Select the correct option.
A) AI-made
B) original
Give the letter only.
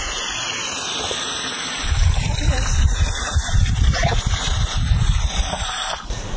A